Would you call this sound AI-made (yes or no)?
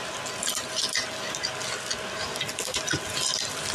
no